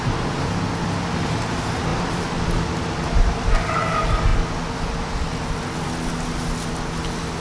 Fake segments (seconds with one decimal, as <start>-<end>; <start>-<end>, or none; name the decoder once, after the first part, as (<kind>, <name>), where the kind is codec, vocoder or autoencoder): 1.9-3.4 (vocoder, BigVGAN v2)